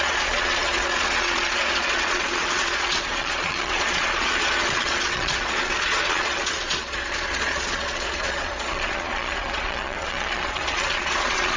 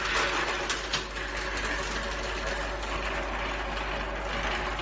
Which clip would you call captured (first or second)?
second